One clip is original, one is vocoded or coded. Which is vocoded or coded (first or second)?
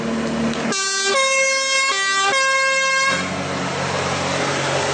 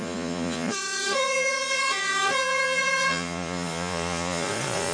second